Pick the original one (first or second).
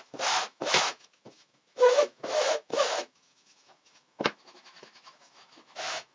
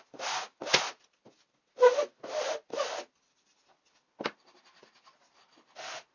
second